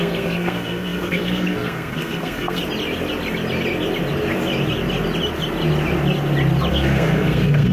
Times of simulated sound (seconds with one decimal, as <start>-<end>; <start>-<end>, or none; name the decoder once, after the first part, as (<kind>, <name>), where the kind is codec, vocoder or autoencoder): 0.0-2.6 (codec, SNAC); 6.7-7.7